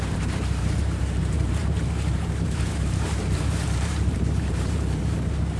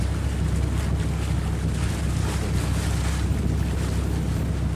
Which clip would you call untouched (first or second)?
second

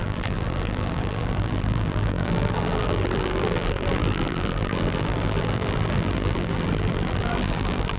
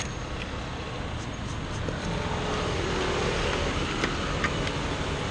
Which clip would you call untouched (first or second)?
second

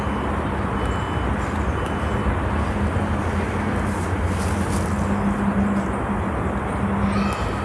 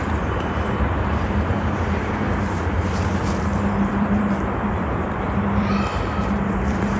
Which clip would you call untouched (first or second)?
first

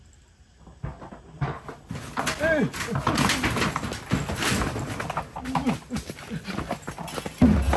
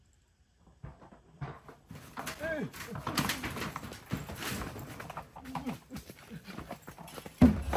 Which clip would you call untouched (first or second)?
first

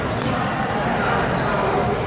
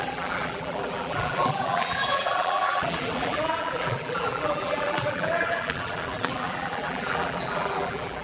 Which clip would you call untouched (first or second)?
first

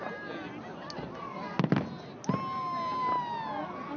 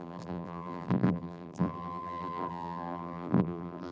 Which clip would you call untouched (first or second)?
first